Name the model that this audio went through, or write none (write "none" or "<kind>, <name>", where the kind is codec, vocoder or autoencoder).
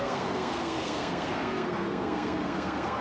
codec, SNAC